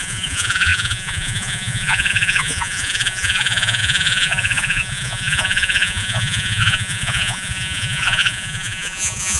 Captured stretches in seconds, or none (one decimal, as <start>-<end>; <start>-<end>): none